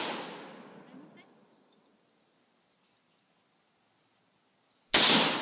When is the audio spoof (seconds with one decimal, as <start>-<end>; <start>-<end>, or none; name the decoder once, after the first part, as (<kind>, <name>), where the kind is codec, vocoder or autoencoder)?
none